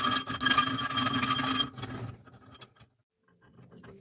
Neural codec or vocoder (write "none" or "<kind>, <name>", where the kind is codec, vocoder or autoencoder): none